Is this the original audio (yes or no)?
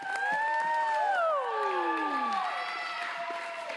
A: yes